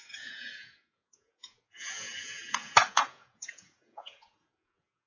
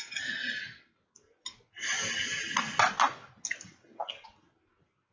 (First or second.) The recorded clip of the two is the second